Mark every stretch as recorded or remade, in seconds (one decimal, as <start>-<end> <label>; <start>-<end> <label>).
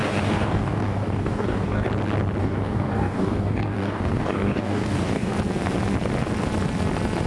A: 0.0-1.9 remade; 1.9-2.4 recorded; 2.4-5.3 remade; 5.3-7.3 recorded